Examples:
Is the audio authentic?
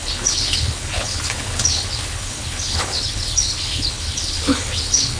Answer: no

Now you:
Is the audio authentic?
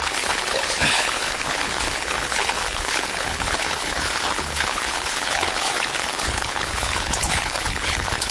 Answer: no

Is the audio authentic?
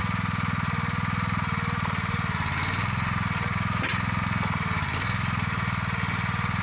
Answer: yes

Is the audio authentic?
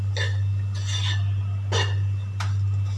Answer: yes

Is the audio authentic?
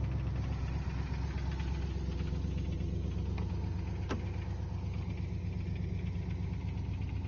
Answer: yes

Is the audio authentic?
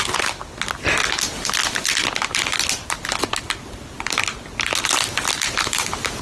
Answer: yes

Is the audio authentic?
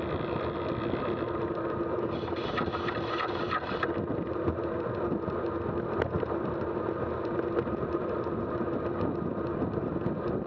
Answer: yes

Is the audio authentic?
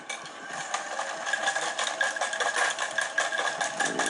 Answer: yes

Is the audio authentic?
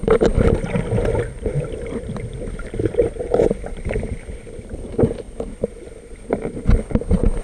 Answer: yes